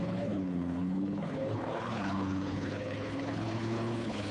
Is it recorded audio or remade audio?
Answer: remade